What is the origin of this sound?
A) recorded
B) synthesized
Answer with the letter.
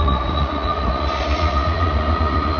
B